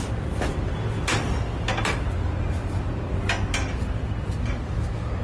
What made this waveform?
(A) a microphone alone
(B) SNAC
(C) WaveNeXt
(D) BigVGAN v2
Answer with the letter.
A